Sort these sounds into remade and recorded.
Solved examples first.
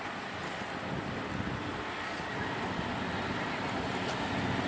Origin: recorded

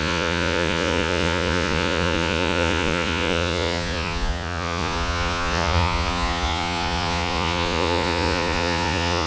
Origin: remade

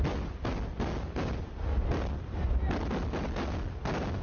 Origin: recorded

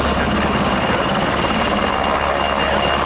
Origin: recorded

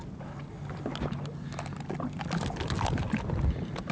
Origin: recorded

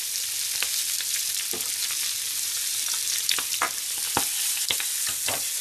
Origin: recorded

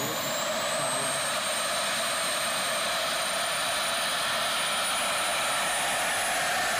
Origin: recorded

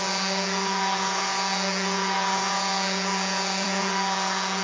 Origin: remade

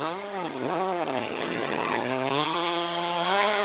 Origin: remade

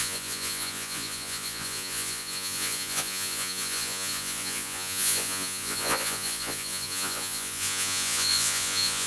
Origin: remade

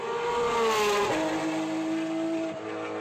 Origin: recorded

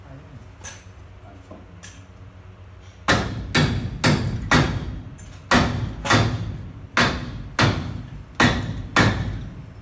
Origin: recorded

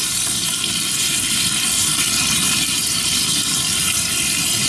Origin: recorded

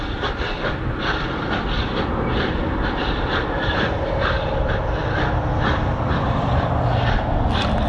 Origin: recorded